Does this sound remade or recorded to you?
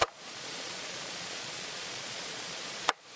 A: remade